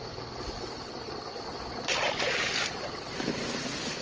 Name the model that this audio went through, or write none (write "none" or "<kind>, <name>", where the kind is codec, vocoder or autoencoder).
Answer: none